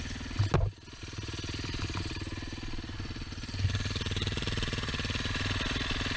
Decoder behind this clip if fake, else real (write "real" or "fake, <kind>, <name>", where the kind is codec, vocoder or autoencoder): real